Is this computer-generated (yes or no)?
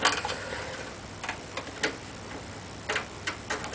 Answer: no